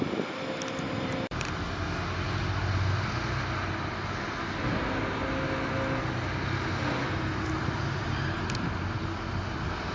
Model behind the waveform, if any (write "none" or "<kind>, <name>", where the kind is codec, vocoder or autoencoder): none